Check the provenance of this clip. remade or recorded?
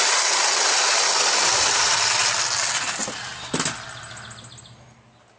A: recorded